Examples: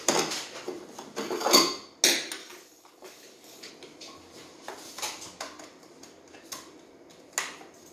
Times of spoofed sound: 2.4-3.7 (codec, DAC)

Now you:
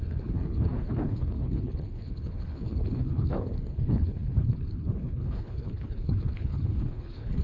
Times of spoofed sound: 0.0-7.4 (codec, HILCodec)

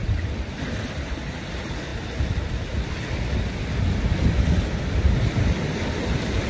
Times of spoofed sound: 0.0-1.9 (vocoder, BigVGAN v2); 4.8-6.5

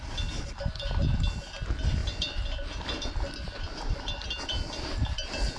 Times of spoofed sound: 2.0-5.6 (vocoder, BigVGAN v2)

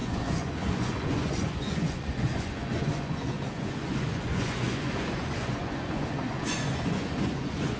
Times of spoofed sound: 0.0-7.8 (vocoder, Vocos)

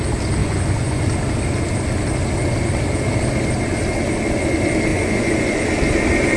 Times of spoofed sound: 0.4-1.0 (vocoder, Vocos); 4.9-5.6

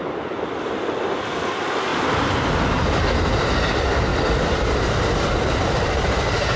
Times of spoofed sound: 1.9-2.6 (vocoder, BigVGAN v2); 4.1-5.1

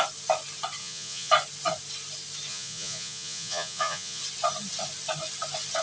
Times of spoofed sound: 0.8-1.3 (vocoder, Vocos); 2.5-4.2